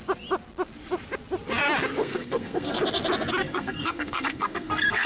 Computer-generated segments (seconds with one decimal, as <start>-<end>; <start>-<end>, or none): 2.0-2.8; 3.4-5.1